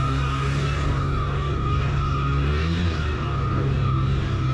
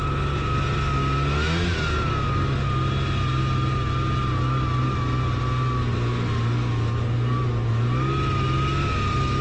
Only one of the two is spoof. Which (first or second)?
first